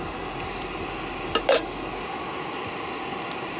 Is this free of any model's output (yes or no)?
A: yes